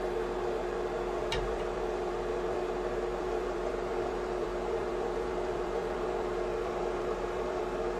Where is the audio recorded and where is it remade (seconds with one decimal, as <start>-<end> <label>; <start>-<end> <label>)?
0.0-1.2 recorded; 1.2-2.7 remade; 2.7-3.1 recorded; 3.1-7.6 remade; 7.6-8.0 recorded